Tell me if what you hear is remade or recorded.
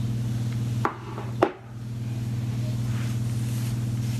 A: recorded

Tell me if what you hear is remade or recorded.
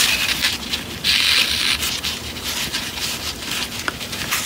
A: recorded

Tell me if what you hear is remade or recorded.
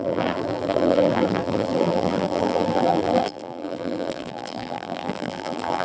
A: remade